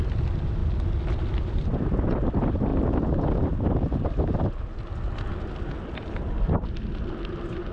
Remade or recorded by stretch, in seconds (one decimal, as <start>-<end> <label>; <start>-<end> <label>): 0.0-0.6 remade; 0.6-1.3 recorded; 1.3-2.7 remade; 2.7-6.2 recorded; 6.2-7.7 remade